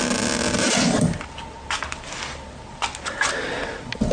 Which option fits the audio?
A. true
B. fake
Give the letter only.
A